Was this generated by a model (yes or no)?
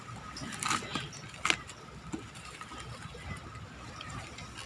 no